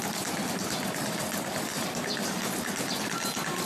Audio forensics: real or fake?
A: real